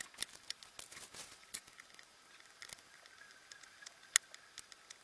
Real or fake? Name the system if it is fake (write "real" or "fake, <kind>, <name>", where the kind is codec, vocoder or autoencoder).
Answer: real